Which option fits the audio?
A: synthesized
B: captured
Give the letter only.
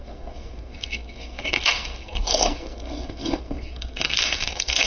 A